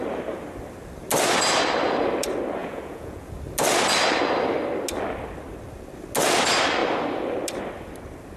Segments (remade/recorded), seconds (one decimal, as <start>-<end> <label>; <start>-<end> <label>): 0.0-2.6 recorded; 2.6-3.3 remade; 3.3-8.4 recorded